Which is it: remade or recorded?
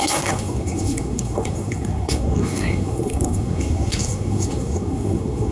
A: remade